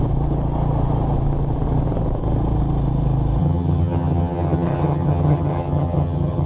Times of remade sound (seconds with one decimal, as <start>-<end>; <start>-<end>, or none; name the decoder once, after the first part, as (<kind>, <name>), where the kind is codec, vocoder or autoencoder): 3.4-6.5 (vocoder, HiFi-GAN)